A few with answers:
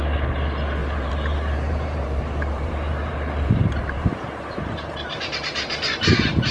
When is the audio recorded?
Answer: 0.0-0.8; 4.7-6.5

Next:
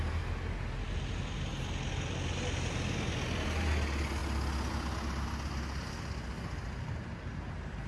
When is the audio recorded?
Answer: 0.0-7.9

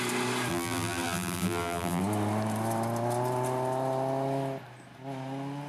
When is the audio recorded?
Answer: 0.0-0.5; 2.0-5.7

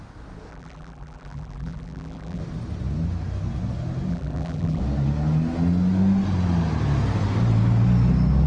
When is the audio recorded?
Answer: 0.0-0.5; 2.4-4.1; 4.8-8.5

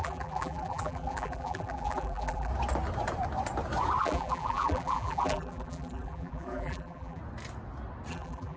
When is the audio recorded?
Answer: 2.5-4.0; 7.2-8.1

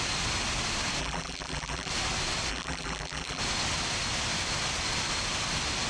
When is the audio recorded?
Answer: 0.0-1.0; 1.9-2.5; 3.4-5.9